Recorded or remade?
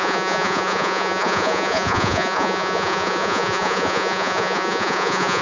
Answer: remade